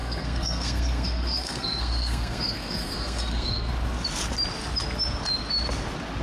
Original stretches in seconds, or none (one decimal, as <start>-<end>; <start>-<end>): 3.7-6.2